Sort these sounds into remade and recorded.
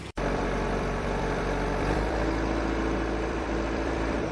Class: remade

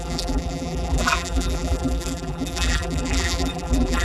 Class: remade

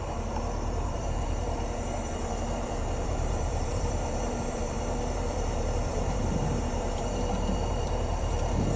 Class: remade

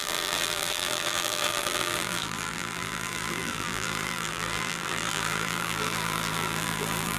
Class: remade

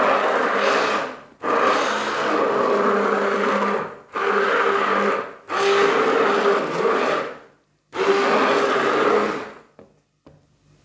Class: recorded